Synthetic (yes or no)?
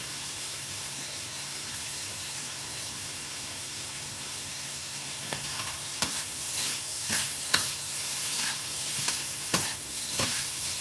yes